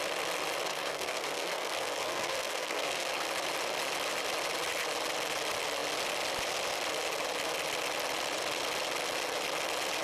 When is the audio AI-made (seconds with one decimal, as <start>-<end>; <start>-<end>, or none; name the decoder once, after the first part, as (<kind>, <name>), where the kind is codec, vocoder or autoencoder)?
0.7-3.3 (codec, SNAC)